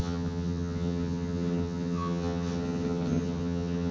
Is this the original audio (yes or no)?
no